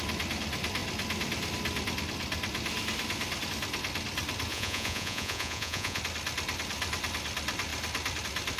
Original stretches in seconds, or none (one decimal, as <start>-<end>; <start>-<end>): 0.0-4.5; 6.0-8.6